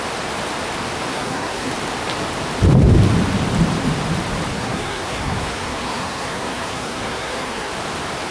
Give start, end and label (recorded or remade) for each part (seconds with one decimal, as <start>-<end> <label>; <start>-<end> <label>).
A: 0.0-1.1 recorded; 1.1-1.7 remade; 1.7-4.5 recorded; 4.5-7.7 remade; 7.7-8.3 recorded